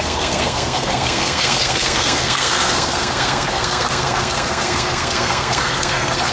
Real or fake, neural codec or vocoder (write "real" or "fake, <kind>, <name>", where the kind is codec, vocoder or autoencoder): fake, codec, SNAC